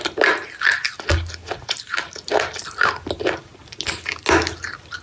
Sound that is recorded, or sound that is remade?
recorded